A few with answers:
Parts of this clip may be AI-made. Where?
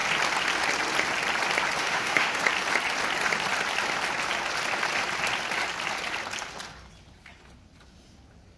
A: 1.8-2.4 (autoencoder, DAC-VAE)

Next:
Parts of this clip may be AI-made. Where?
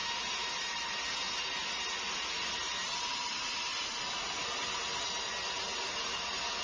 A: none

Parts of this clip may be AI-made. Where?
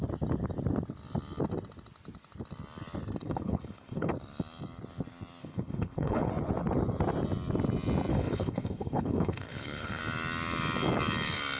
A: 3.2-4.1 (codec, HILCodec); 5.4-6.3; 8.1-10.0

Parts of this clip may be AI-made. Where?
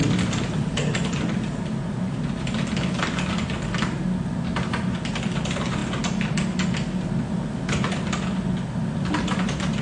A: none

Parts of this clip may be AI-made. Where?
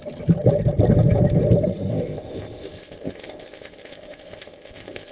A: 1.9-5.1 (codec, ZipCodec)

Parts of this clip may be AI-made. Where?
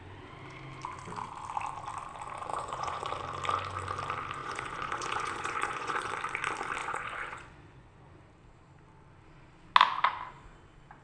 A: 2.5-3.1 (vocoder, Vocos); 4.4-6.1; 6.8-8.1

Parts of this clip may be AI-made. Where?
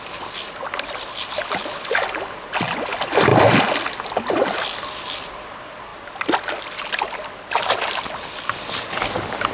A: none